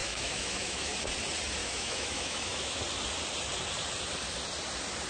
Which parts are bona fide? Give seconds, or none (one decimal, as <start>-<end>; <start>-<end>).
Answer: 0.9-1.6; 2.8-5.1